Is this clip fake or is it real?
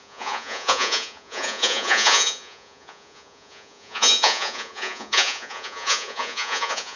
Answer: fake